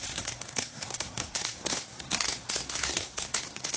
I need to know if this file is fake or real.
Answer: fake